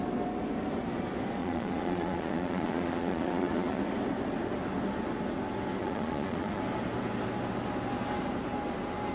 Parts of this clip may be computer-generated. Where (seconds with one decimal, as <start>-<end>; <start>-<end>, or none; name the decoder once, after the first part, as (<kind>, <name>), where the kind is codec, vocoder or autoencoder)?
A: 1.4-3.8 (vocoder, Vocos); 5.8-6.6